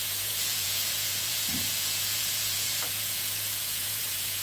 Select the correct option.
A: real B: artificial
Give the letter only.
B